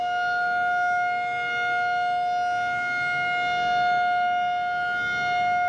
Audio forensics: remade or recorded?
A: recorded